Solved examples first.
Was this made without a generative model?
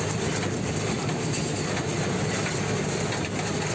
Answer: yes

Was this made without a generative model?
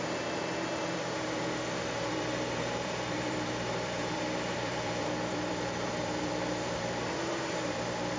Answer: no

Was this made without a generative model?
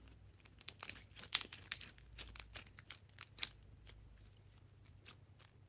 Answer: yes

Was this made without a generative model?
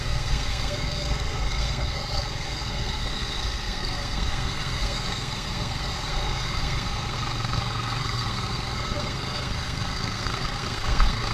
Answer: no